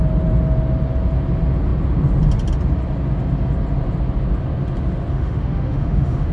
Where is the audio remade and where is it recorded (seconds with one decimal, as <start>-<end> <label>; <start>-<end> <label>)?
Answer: 0.0-5.1 recorded; 5.1-6.3 remade